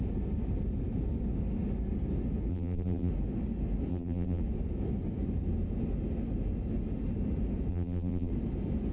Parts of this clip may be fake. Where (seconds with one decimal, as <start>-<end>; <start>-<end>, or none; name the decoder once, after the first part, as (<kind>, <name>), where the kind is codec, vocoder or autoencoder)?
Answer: 2.5-3.1 (vocoder, BigVGAN v2); 3.9-4.4; 7.7-8.3